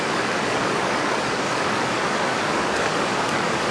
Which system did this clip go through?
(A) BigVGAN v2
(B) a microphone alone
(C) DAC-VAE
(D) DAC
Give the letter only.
D